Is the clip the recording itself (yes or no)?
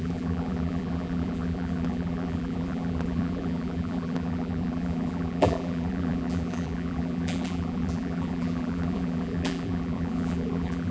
no